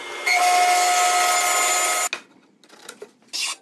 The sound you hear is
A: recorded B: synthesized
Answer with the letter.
A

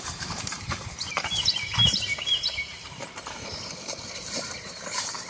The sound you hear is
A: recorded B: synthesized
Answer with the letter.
B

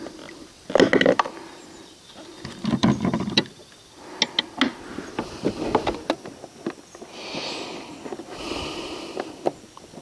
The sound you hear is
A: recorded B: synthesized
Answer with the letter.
A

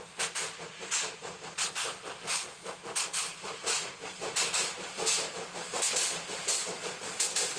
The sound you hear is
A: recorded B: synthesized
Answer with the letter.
A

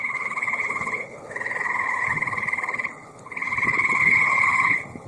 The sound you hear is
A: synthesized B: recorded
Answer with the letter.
A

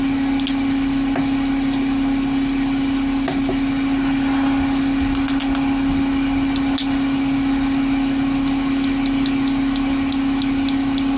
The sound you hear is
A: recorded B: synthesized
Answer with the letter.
A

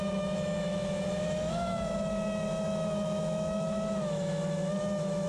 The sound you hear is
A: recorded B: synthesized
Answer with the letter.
B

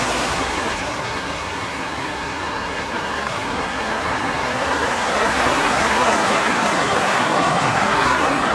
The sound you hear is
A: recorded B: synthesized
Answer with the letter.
B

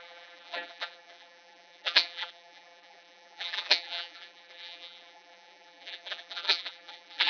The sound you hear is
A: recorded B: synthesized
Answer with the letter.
B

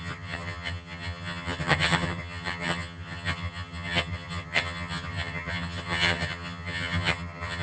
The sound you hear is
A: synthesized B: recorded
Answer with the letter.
A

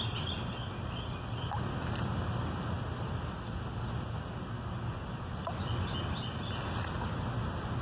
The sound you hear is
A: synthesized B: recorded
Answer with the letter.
B